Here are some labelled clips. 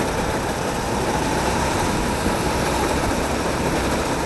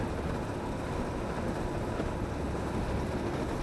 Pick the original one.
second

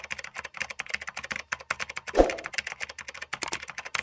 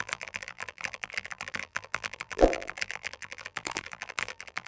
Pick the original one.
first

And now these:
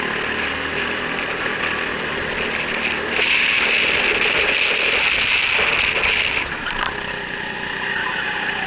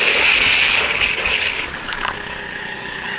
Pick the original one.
first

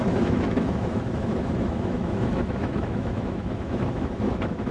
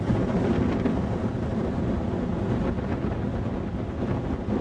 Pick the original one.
second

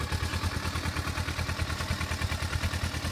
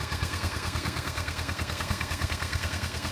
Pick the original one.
first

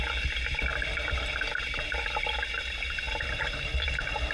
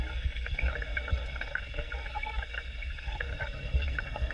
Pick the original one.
first